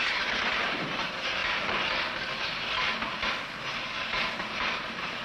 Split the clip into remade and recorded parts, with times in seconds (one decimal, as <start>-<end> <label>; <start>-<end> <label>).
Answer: 0.0-4.4 recorded; 4.4-5.2 remade